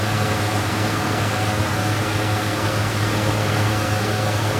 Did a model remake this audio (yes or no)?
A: yes